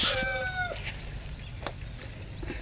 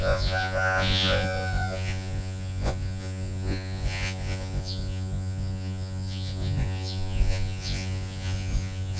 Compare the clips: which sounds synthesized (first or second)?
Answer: second